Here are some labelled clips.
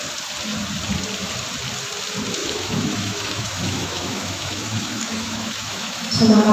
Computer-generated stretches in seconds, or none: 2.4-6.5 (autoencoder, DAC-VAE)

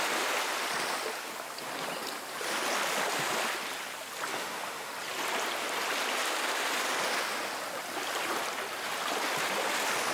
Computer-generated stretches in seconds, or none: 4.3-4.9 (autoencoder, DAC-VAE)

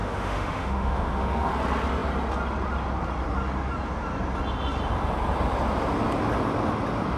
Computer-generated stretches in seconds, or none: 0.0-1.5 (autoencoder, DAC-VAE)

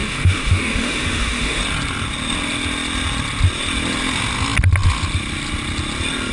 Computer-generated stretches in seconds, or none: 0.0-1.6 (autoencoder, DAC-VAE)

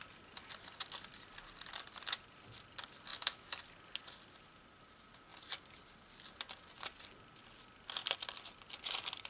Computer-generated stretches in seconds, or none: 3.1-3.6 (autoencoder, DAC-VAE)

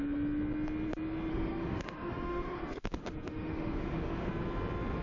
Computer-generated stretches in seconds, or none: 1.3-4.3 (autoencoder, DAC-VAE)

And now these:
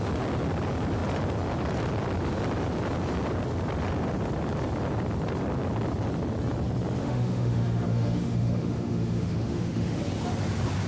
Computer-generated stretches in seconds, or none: 7.0-10.0 (autoencoder, DAC-VAE)